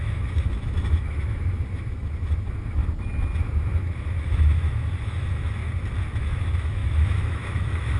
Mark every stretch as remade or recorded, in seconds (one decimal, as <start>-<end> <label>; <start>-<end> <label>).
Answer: 0.0-2.8 remade; 2.8-3.4 recorded; 3.4-5.6 remade; 5.6-6.2 recorded; 6.2-8.0 remade